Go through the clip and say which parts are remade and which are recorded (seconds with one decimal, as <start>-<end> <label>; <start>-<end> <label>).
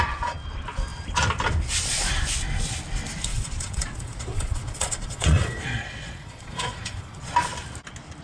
0.0-3.3 recorded; 3.3-7.3 remade; 7.3-8.2 recorded